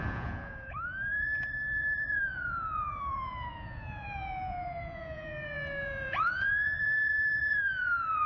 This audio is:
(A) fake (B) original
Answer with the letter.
A